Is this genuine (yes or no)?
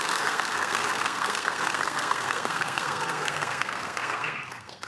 no